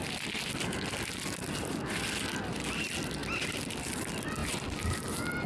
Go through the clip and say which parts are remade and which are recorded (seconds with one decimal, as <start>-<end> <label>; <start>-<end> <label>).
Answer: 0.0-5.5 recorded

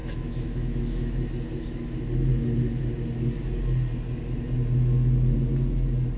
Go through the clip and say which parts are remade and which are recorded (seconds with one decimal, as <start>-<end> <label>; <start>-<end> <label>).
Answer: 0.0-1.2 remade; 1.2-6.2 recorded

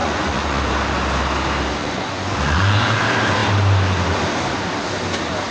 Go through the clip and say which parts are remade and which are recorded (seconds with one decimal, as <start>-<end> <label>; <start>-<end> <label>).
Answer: 0.0-0.6 remade; 0.6-1.8 recorded; 1.8-3.0 remade; 3.0-5.5 recorded

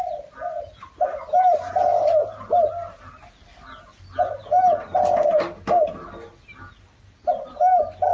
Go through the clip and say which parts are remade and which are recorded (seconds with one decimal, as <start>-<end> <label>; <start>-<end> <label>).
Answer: 0.0-8.1 recorded

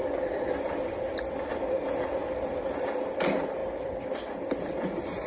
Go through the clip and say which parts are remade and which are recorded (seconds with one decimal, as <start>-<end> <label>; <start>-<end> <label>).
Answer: 0.0-1.5 remade; 1.5-2.2 recorded; 2.2-2.8 remade; 2.8-5.3 recorded